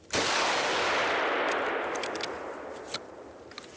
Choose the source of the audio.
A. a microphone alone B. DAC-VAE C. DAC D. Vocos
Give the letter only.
A